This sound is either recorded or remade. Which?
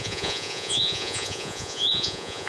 remade